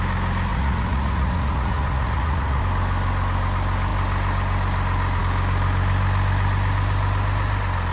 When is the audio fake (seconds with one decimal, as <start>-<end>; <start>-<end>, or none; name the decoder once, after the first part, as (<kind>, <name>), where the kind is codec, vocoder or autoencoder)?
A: 0.5-2.6 (vocoder, Vocos)